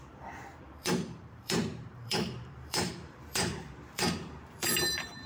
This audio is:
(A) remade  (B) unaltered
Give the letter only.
A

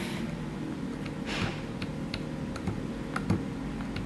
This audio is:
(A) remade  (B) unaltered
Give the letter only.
B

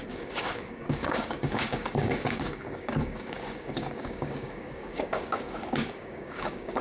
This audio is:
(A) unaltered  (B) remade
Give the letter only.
B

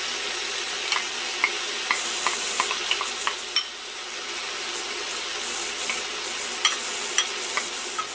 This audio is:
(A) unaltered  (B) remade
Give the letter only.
A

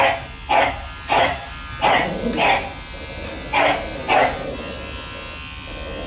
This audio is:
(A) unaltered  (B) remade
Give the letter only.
A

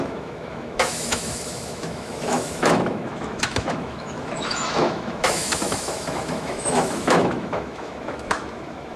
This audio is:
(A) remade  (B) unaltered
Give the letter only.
A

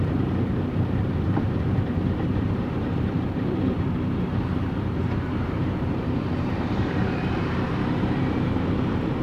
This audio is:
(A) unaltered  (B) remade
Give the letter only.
B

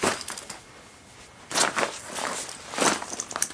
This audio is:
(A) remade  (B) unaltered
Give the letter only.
B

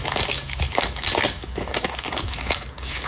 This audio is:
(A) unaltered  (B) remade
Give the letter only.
B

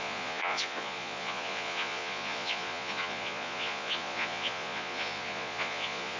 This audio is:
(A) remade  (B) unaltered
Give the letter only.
A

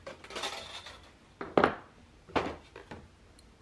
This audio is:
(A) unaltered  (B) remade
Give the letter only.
A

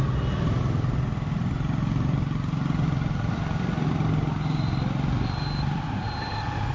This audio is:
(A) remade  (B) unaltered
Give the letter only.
B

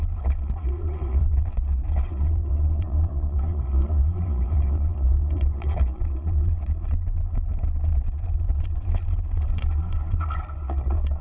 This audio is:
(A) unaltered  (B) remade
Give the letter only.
B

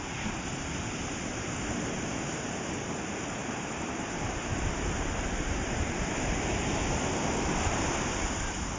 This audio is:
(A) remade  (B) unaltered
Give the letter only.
A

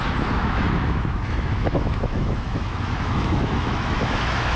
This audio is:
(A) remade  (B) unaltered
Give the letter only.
A